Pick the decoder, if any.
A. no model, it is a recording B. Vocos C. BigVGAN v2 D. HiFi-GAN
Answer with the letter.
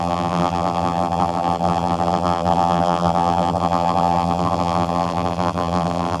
C